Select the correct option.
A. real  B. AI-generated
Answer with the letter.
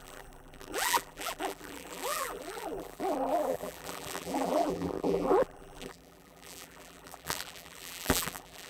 B